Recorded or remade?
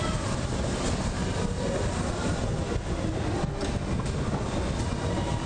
recorded